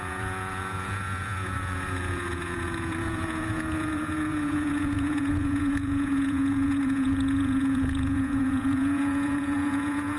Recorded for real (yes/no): no